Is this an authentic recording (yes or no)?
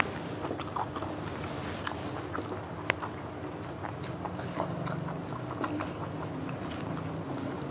yes